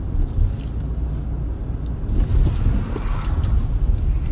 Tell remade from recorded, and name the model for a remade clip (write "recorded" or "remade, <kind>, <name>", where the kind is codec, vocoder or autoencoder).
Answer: recorded